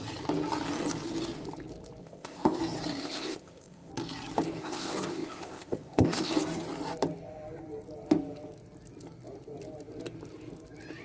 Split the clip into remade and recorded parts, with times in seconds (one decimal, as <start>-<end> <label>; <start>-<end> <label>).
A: 0.0-2.0 recorded; 2.0-2.6 remade; 2.6-3.0 recorded; 3.0-3.9 remade; 3.9-4.6 recorded; 4.6-6.3 remade; 6.3-11.0 recorded